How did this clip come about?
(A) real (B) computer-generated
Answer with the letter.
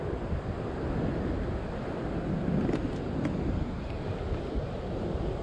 A